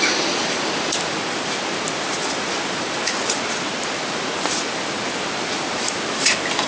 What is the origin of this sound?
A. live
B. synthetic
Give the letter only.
A